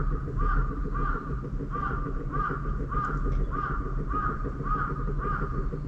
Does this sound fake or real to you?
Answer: real